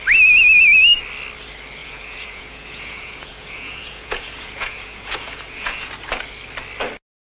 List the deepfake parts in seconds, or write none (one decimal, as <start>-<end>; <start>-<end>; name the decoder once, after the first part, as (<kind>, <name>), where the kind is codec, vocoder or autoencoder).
1.8-5.9 (vocoder, Vocos)